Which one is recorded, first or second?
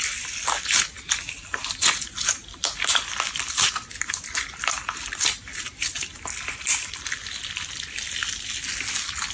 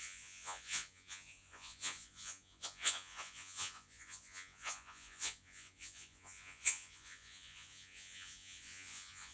first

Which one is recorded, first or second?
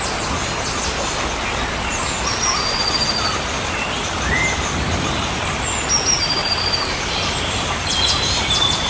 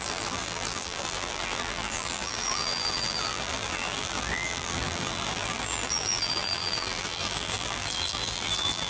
first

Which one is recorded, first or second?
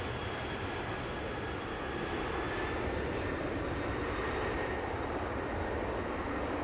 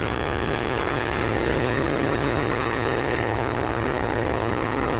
first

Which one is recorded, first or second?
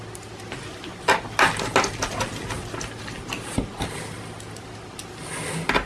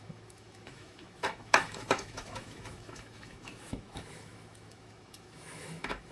first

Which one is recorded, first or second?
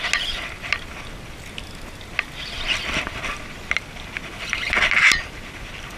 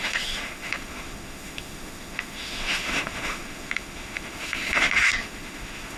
first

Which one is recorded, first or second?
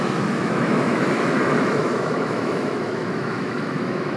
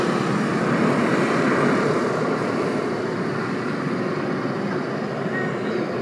second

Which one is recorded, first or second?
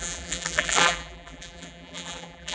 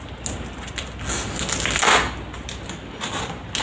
second